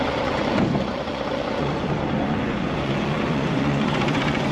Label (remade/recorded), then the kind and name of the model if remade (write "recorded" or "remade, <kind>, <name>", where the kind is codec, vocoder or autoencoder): remade, vocoder, Vocos